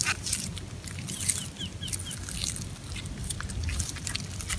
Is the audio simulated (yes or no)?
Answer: no